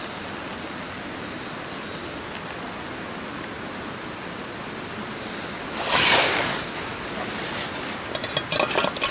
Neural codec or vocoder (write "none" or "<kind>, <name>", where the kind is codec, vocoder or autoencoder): none